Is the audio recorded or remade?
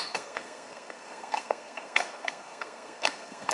remade